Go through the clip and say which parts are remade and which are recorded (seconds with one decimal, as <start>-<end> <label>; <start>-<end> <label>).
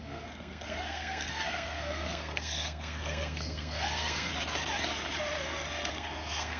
0.0-4.3 remade; 4.3-5.9 recorded; 5.9-6.6 remade